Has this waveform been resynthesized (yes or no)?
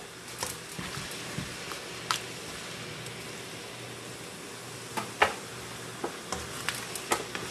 no